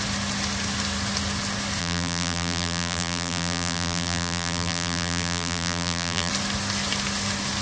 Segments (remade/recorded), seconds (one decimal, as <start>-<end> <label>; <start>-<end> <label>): 0.0-1.8 recorded; 1.8-6.3 remade; 6.3-7.6 recorded